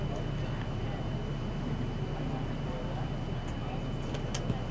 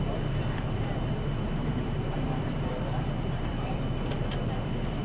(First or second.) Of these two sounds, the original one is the first